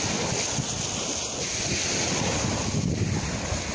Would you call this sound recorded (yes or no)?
yes